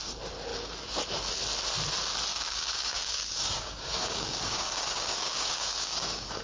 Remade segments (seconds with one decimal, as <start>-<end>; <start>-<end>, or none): 2.3-6.4